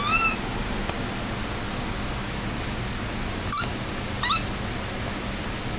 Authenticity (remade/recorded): recorded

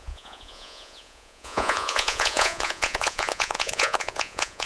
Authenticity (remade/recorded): remade